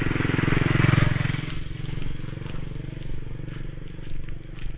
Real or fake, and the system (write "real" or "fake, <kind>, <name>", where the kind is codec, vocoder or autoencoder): real